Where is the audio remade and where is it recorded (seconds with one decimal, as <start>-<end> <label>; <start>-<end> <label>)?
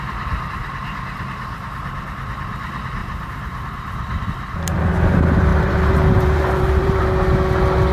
0.0-3.0 recorded; 3.0-4.3 remade; 4.3-5.5 recorded; 5.5-7.0 remade; 7.0-7.9 recorded